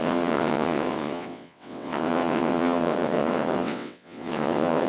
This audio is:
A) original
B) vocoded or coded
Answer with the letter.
B